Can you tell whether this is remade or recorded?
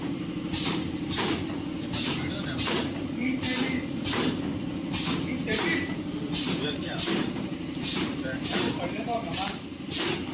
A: remade